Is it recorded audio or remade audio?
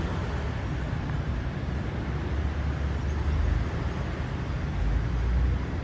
recorded